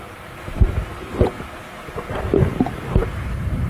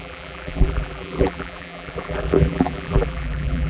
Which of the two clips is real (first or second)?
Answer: first